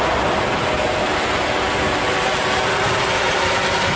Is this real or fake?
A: real